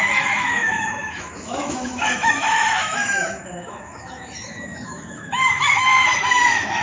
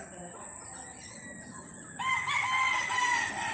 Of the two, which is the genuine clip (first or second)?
second